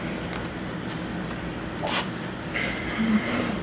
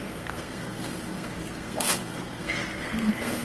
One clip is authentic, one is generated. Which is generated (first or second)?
second